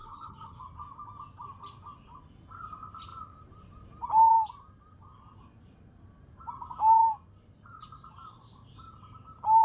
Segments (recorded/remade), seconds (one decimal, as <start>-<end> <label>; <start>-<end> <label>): 0.0-0.6 remade; 0.6-9.6 recorded